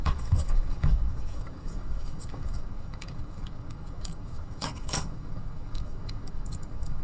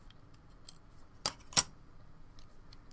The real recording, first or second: second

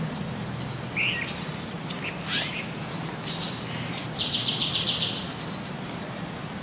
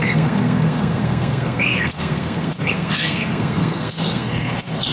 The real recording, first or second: first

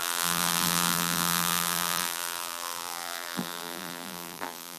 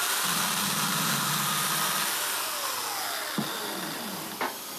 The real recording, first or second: second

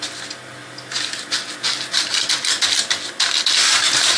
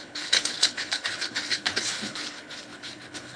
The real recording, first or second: first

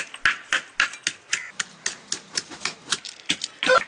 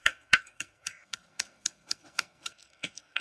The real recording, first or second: first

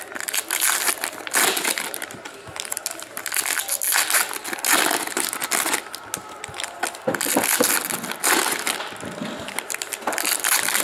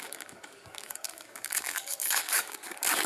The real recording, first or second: first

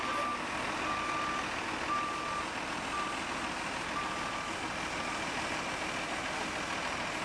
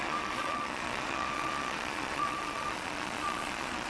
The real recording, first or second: first